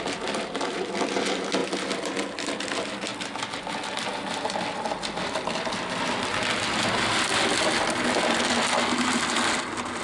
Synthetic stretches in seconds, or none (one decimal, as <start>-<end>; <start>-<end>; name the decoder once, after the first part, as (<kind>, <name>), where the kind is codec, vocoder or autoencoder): none